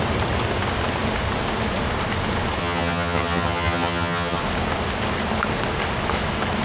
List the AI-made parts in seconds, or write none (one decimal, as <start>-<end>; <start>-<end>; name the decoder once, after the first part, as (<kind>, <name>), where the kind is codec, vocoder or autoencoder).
2.6-4.4 (vocoder, HiFi-GAN)